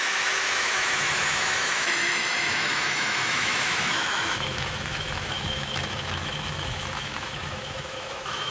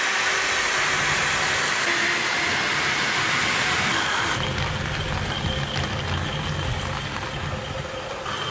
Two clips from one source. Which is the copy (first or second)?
first